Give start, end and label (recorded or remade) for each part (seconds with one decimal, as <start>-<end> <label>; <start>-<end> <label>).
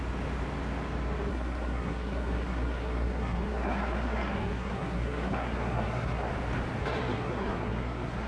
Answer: 0.0-1.3 recorded; 1.3-6.3 remade; 6.3-6.8 recorded; 6.8-8.3 remade